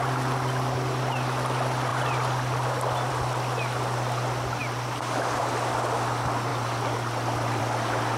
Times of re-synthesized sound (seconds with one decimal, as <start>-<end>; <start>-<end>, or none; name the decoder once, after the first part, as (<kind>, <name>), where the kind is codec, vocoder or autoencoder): none